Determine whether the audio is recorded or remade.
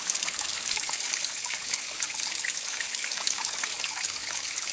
remade